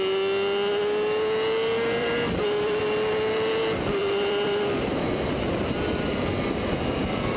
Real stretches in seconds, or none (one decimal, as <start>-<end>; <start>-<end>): 0.0-2.0; 2.8-4.0; 5.9-7.4